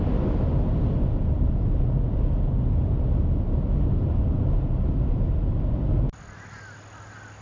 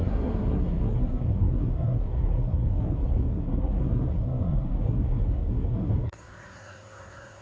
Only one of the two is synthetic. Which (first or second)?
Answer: second